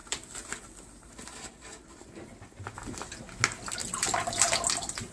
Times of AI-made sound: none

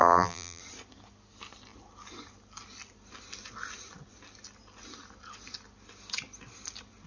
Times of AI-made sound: 0.0-0.6 (vocoder, BigVGAN v2)

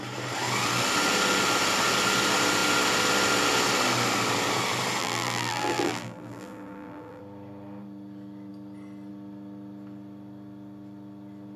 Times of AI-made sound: 5.0-7.2 (vocoder, BigVGAN v2)

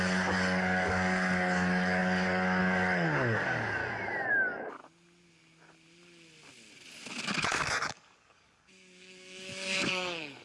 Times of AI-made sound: 0.0-3.8 (codec, DAC); 4.3-4.8; 7.5-10.4

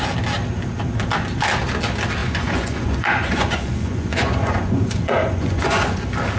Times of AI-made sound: 2.2-6.0 (vocoder, Vocos)

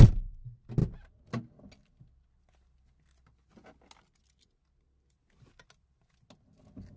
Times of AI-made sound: none

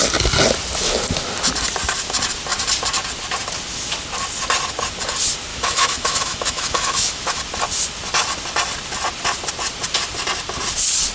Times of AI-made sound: 5.5-7.4 (autoencoder, DAC-VAE)